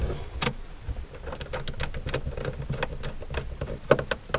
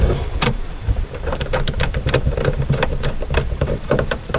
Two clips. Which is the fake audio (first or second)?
second